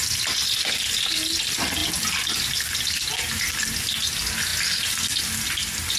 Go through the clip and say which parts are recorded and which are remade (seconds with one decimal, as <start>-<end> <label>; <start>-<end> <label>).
0.0-6.0 recorded